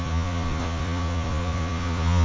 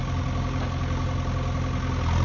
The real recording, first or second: second